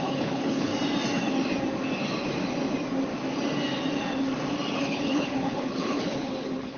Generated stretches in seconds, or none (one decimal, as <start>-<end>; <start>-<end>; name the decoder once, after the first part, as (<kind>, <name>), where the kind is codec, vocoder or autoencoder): 0.0-0.7 (codec, HILCodec); 4.8-6.8